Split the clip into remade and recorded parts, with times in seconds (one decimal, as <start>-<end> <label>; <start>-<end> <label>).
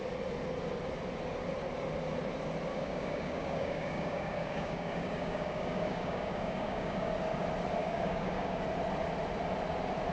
0.0-2.7 recorded; 2.7-7.1 remade; 7.1-7.8 recorded; 7.8-8.6 remade; 8.6-10.1 recorded